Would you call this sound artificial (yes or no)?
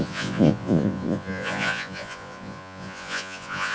yes